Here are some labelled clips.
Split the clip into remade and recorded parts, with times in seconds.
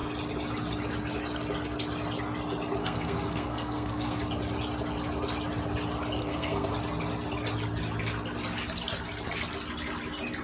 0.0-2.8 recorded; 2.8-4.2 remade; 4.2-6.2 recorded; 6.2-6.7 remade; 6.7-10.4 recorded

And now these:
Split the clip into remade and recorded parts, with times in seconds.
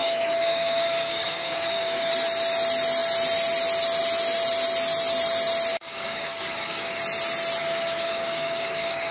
0.0-2.1 remade; 2.1-5.7 recorded; 5.7-7.0 remade; 7.0-7.6 recorded; 7.6-9.1 remade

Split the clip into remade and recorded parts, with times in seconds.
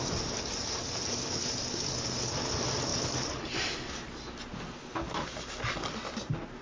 0.0-6.6 recorded